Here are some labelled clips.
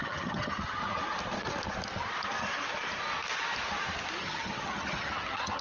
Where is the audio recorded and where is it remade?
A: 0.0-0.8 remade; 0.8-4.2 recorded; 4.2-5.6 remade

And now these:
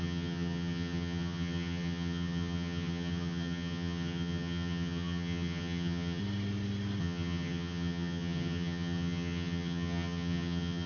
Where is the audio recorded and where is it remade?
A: 0.0-6.2 remade; 6.2-7.0 recorded; 7.0-10.9 remade

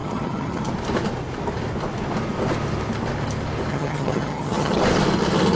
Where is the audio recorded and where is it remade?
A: 0.0-0.7 remade; 0.7-3.7 recorded; 3.7-4.8 remade; 4.8-5.5 recorded

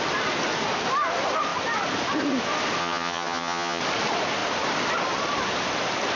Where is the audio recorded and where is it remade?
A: 0.0-2.8 recorded; 2.8-3.8 remade; 3.8-6.2 recorded

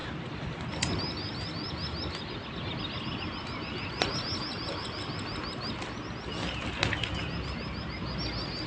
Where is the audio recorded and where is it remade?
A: 0.0-8.7 recorded

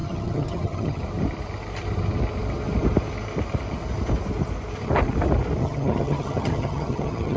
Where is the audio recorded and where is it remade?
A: 0.0-1.0 remade; 1.0-5.6 recorded; 5.6-7.4 remade

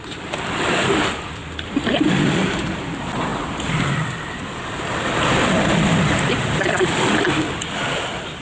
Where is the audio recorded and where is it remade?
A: 0.0-8.4 recorded